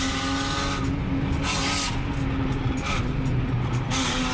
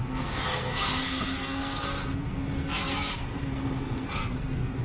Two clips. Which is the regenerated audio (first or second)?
second